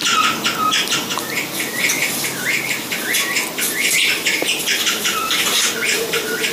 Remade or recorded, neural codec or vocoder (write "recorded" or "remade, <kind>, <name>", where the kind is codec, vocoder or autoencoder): recorded